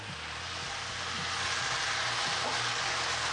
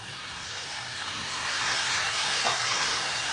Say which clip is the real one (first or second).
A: first